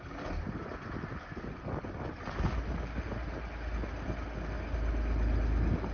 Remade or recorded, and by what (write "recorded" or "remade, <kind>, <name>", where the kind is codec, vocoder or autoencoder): recorded